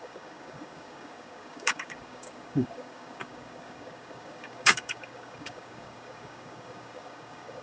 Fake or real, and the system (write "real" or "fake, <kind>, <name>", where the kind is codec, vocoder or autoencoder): fake, codec, DAC